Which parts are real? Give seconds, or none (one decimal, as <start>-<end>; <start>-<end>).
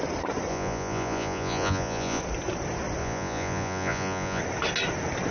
0.0-0.5; 2.2-3.0; 4.4-5.3